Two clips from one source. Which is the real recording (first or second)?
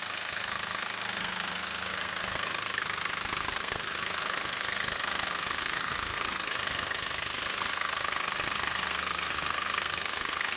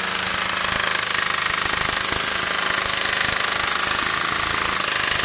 second